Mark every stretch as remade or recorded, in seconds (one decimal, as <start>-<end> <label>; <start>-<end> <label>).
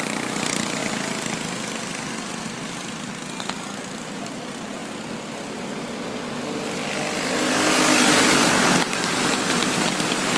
0.0-0.8 remade; 0.8-3.4 recorded; 3.4-4.8 remade; 4.8-8.2 recorded; 8.2-10.4 remade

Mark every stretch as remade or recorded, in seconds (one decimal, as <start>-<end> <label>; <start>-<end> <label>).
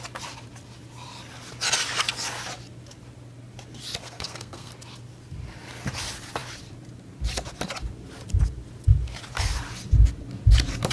0.0-4.0 recorded; 4.0-4.7 remade; 4.7-10.9 recorded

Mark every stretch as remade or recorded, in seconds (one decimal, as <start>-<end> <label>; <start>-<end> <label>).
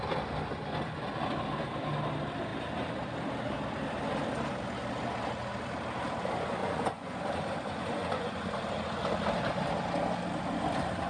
0.0-6.6 recorded; 6.6-7.2 remade; 7.2-8.0 recorded; 8.0-8.5 remade; 8.5-11.1 recorded